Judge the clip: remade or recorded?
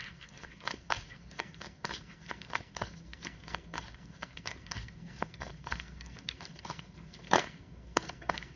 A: remade